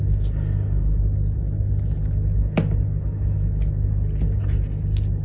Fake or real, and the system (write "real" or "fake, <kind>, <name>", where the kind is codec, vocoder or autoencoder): real